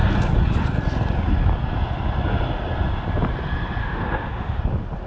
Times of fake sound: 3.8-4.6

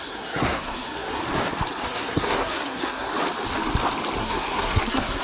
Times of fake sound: 0.0-1.2; 1.8-3.1; 4.2-5.2

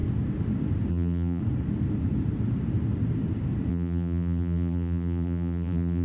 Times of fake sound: 0.9-1.4; 3.7-6.0

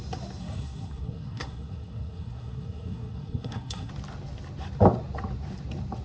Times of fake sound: 0.4-3.9

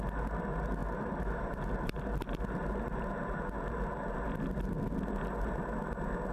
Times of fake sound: 0.8-2.0

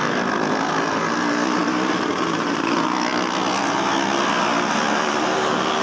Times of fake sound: none